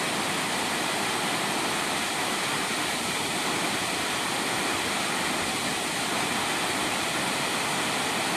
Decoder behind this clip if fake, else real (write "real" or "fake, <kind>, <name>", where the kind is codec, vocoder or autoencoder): real